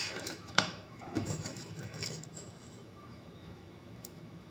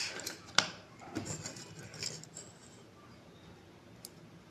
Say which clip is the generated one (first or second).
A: first